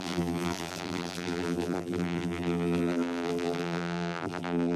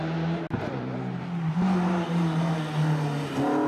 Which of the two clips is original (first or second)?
second